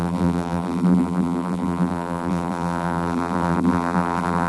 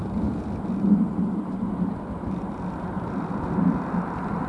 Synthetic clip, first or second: first